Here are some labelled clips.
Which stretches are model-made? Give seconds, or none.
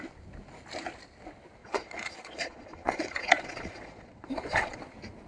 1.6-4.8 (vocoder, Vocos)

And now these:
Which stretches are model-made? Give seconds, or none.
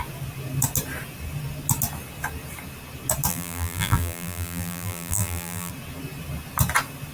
3.3-5.7 (vocoder, BigVGAN v2)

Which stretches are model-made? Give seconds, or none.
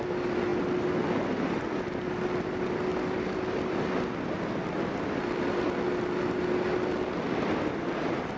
none